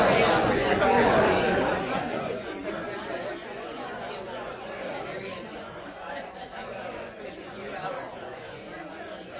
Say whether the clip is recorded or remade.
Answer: remade